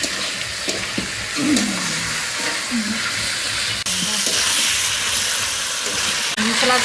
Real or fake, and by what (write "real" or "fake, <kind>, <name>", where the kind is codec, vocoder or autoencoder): real